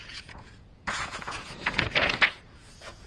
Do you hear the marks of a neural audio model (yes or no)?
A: yes